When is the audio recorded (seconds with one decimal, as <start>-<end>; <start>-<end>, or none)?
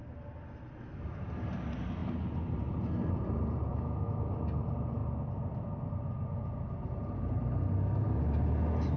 0.0-3.7; 4.3-9.0